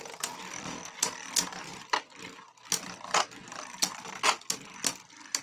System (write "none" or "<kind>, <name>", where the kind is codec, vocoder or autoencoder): none